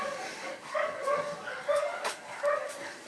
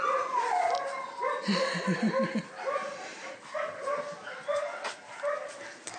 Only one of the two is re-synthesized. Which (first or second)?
first